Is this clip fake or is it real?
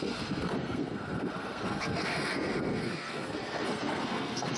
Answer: fake